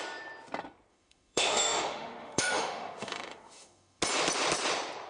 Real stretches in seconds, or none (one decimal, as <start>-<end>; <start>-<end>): 0.0-0.9; 4.0-5.1